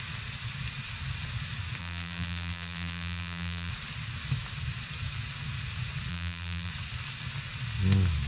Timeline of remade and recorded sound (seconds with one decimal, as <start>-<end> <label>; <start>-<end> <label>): 0.0-1.8 recorded; 1.8-3.7 remade; 3.7-6.1 recorded; 6.1-6.7 remade; 6.7-8.3 recorded